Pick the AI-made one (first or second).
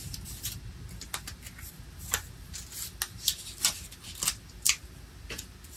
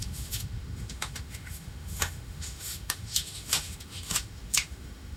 second